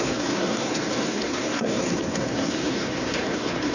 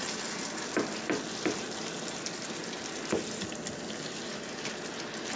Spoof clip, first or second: first